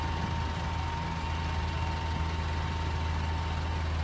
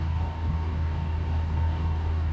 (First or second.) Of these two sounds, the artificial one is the second